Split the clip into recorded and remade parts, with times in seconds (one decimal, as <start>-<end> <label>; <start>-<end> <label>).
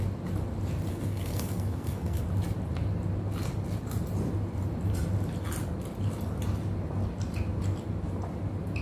0.0-0.9 recorded; 0.9-2.2 remade; 2.2-8.8 recorded